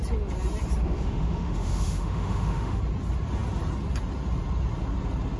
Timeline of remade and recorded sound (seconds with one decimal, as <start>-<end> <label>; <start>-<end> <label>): 0.0-0.8 recorded; 0.8-2.8 remade; 2.8-5.4 recorded